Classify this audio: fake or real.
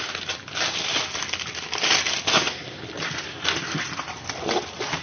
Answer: real